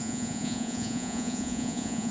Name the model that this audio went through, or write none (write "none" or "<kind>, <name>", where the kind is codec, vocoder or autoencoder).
vocoder, Vocos